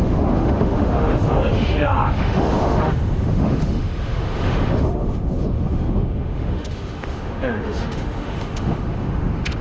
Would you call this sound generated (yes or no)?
yes